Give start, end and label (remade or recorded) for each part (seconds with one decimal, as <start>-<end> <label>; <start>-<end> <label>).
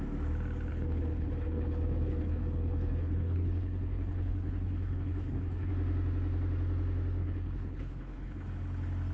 0.0-0.7 recorded; 0.7-5.7 remade; 5.7-7.2 recorded; 7.2-8.5 remade; 8.5-9.1 recorded